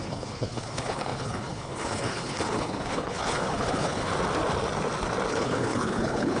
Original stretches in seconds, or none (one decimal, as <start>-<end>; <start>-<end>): 4.1-5.3

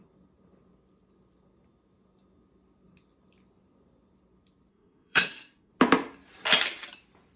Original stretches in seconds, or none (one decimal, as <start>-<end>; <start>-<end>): 0.0-4.7; 5.7-7.4

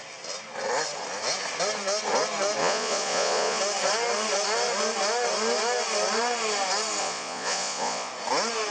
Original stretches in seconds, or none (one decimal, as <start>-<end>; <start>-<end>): 0.0-2.6; 3.6-7.0; 8.1-8.7

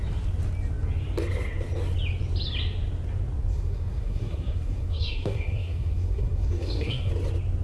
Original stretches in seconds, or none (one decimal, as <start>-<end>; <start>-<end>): 0.0-3.5; 7.1-7.6

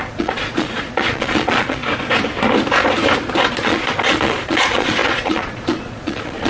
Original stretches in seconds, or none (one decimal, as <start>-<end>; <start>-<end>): 1.8-3.5

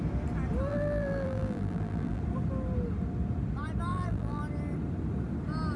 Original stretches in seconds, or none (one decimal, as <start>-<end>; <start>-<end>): 0.0-0.7; 2.2-3.9; 4.4-5.8

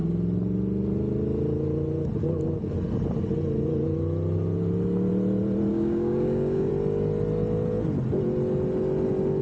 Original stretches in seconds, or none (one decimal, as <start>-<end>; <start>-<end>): 0.0-5.7; 6.7-9.4

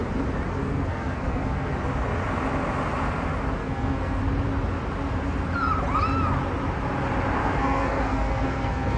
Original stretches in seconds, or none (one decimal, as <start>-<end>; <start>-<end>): 0.0-0.6; 1.7-3.6; 4.2-7.4